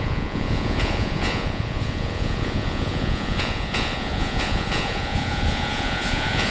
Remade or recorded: remade